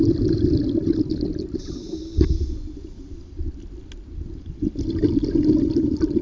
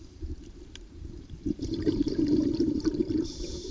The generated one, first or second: second